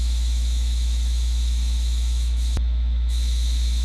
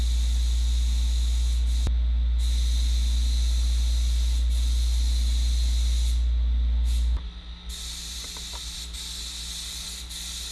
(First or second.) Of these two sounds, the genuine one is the second